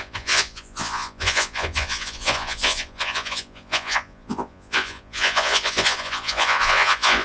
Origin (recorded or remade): remade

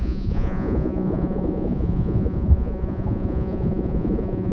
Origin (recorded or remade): remade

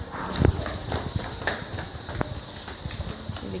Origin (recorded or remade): recorded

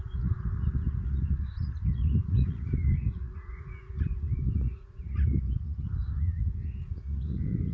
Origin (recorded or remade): remade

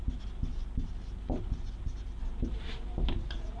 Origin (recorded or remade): recorded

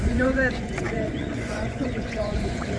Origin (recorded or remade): remade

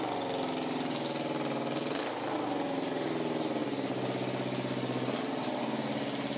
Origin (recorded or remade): recorded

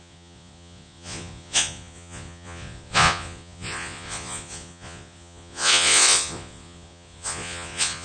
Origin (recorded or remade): remade